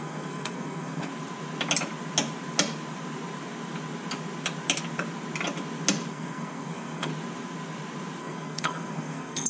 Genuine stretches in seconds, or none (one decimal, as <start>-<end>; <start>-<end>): 1.1-6.1; 7.1-8.2